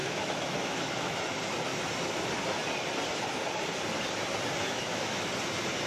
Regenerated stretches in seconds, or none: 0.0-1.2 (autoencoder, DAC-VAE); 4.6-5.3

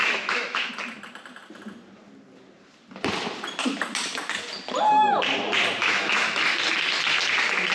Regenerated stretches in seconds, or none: 0.0-0.7 (autoencoder, DAC-VAE); 5.8-6.4

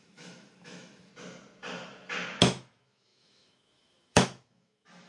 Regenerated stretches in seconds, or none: 0.0-1.1 (autoencoder, DAC-VAE); 2.4-5.1

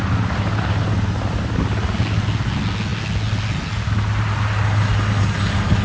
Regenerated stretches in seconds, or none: none

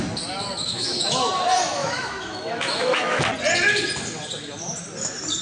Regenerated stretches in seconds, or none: 0.6-1.3 (autoencoder, DAC-VAE); 1.8-3.2